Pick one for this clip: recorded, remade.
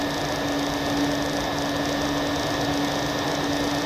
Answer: recorded